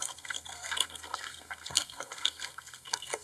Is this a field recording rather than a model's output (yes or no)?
no